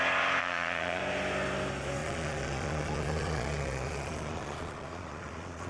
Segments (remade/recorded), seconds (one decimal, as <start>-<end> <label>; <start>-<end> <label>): 0.0-0.4 recorded; 0.4-1.0 remade; 1.0-2.0 recorded; 2.0-5.7 remade